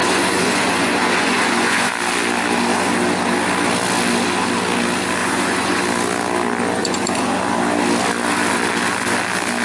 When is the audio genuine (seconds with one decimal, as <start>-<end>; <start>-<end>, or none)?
1.9-5.2; 5.8-6.8; 7.4-9.6